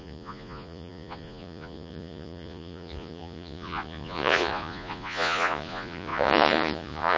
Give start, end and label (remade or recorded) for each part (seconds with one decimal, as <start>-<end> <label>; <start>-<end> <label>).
0.0-7.2 remade